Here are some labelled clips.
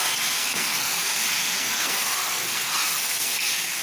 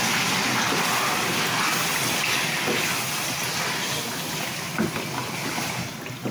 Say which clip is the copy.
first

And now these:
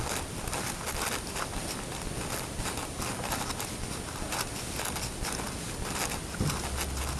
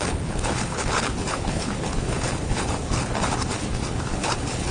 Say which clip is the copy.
second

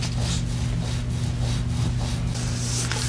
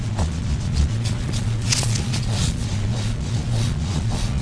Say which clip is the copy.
second